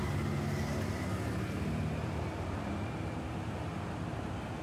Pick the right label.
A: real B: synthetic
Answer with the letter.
A